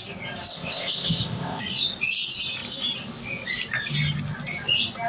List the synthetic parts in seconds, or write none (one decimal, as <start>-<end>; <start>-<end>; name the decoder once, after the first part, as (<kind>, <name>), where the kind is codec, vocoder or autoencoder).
0.5-1.6 (codec, ZipCodec)